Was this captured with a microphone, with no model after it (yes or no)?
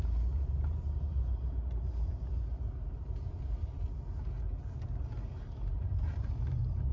no